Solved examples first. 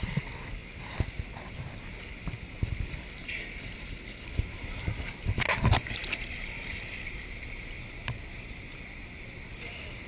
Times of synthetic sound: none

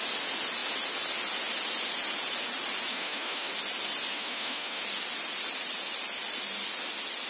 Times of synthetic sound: 2.9-3.5 (autoencoder, DAC-VAE); 4.1-4.8

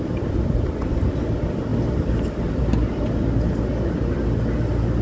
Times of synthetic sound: none

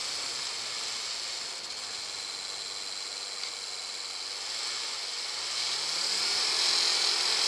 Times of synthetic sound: none

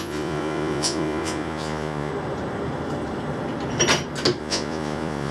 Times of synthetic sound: 0.0-2.1 (vocoder, Vocos); 4.4-5.3

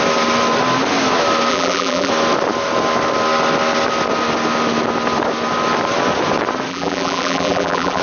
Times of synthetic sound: 1.5-2.1 (vocoder, BigVGAN v2); 6.7-8.0

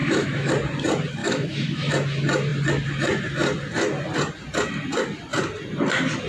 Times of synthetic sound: 0.0-0.5 (autoencoder, DAC-VAE); 1.2-1.9